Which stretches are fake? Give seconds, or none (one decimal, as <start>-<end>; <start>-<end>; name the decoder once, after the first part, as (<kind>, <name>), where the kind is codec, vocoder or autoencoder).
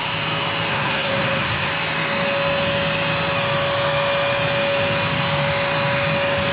0.7-1.7 (codec, SNAC)